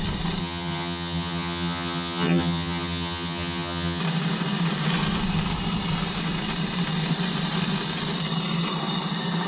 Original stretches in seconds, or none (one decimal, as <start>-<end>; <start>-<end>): 0.0-0.4; 4.0-9.5